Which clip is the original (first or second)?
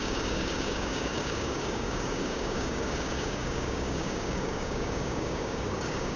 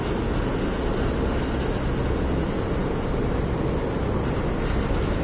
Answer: second